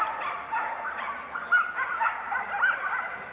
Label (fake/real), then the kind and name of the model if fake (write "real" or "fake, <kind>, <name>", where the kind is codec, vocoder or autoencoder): real